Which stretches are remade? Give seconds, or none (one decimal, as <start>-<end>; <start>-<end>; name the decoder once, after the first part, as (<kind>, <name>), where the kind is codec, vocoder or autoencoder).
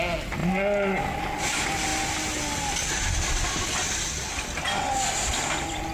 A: none